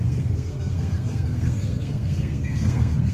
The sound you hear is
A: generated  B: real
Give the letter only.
A